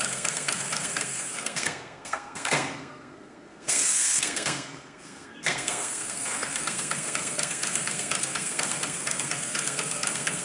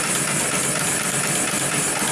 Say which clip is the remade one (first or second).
first